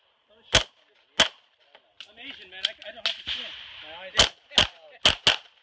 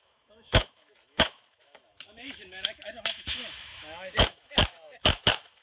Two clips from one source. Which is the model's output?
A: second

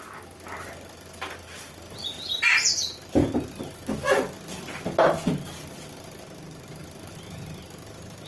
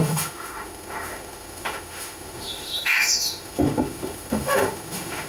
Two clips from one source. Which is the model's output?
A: second